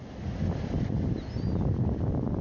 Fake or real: real